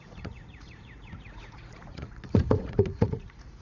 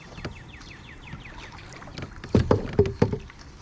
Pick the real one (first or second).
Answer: second